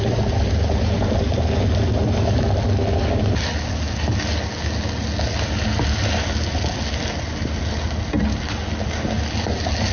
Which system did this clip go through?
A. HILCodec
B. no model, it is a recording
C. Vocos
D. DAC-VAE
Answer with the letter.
B